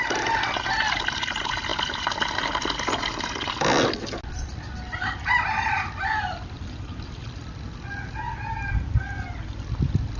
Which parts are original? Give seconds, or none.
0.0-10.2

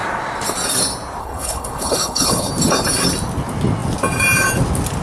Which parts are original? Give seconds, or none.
0.0-1.2; 2.5-5.0